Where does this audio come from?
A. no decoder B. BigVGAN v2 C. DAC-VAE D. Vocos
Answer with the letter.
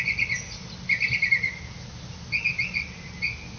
A